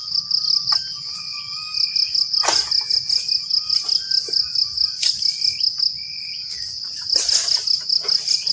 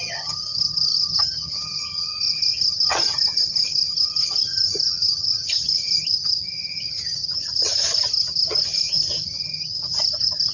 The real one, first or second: first